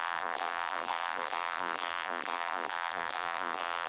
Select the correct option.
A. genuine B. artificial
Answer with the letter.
B